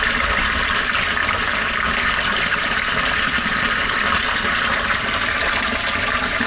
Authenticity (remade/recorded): remade